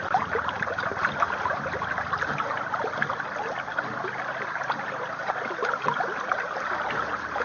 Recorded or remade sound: recorded